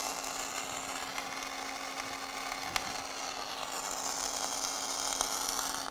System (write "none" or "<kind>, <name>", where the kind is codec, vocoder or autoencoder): none